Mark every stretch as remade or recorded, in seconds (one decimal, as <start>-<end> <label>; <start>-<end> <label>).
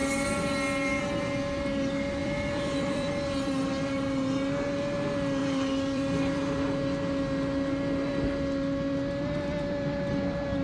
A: 0.0-2.2 recorded; 2.2-3.1 remade; 3.1-5.4 recorded; 5.4-6.6 remade; 6.6-10.6 recorded